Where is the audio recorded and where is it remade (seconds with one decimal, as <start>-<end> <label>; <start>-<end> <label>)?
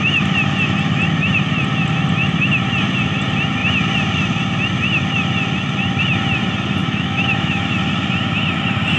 0.0-6.8 recorded; 6.8-7.6 remade; 7.6-9.0 recorded